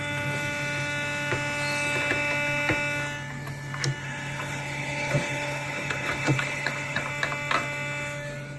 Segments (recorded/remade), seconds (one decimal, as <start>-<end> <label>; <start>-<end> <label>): 0.0-4.0 recorded; 4.0-7.1 remade; 7.1-8.6 recorded